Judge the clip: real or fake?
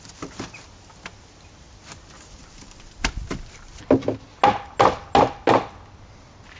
real